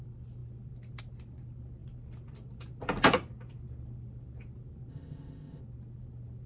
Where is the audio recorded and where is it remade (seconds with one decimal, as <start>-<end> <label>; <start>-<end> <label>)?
0.0-4.9 recorded; 4.9-5.6 remade; 5.6-6.5 recorded